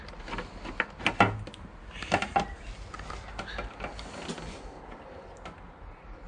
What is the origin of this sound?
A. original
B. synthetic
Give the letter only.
A